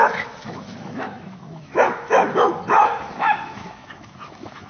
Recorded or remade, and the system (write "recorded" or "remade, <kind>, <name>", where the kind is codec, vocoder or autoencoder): remade, autoencoder, DAC-VAE